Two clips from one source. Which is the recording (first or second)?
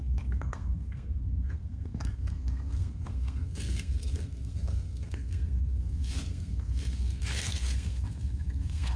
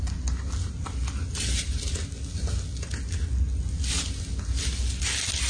second